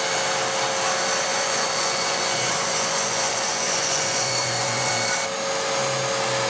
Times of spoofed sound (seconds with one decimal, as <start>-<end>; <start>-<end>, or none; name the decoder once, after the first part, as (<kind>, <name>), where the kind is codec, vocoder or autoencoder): 1.3-4.9 (vocoder, Vocos)

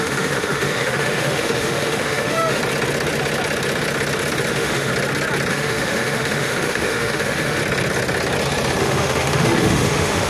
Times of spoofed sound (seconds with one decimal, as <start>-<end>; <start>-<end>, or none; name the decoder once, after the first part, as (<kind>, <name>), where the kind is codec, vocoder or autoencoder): 0.0-2.6 (autoencoder, DAC-VAE); 4.5-4.9; 5.5-7.6; 8.8-10.3

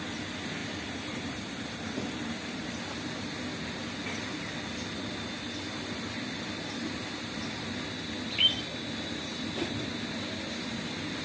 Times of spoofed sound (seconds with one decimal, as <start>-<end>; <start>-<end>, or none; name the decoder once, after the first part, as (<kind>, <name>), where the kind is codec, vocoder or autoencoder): 0.6-3.2 (vocoder, BigVGAN v2)